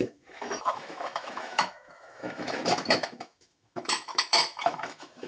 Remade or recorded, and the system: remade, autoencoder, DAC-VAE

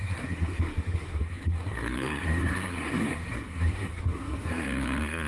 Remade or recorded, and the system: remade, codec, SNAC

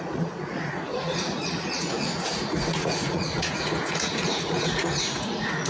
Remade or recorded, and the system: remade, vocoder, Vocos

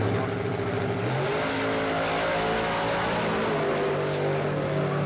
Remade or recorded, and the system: recorded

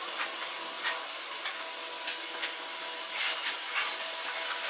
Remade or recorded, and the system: recorded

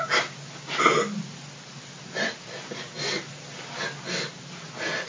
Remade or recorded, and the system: recorded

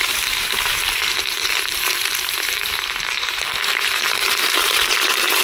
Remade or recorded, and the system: remade, vocoder, BigVGAN v2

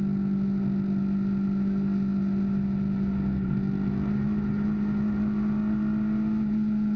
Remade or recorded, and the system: recorded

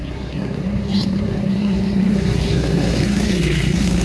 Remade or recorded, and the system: remade, codec, SNAC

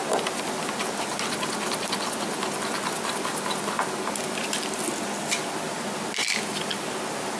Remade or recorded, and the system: recorded